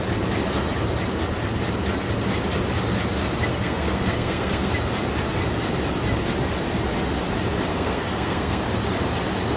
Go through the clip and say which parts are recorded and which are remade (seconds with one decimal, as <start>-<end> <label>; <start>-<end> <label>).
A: 0.0-3.5 recorded; 3.5-4.7 remade; 4.7-7.7 recorded; 7.7-8.6 remade; 8.6-9.6 recorded